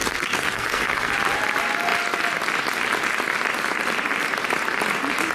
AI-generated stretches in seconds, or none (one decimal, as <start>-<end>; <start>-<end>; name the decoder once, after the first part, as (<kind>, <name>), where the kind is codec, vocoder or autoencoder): 0.0-1.1 (codec, SNAC)